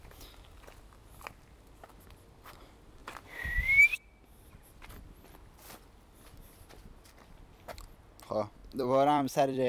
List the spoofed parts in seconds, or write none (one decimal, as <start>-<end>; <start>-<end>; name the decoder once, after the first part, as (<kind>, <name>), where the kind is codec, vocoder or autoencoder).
3.0-3.8 (vocoder, BigVGAN v2); 8.6-9.7